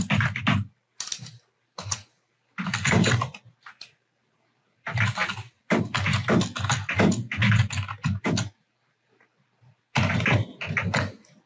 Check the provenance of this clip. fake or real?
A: real